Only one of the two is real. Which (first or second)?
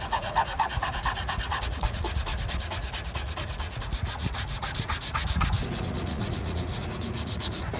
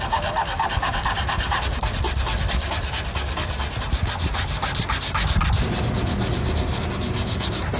second